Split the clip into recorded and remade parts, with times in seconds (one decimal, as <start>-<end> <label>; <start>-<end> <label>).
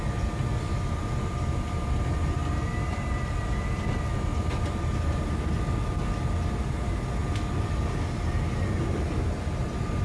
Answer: 0.0-10.0 recorded